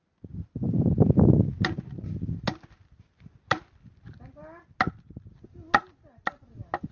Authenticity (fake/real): real